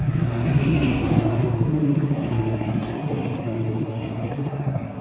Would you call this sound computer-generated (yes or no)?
yes